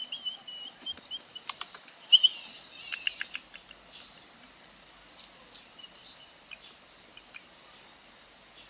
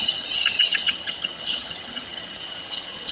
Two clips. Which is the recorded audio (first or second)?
first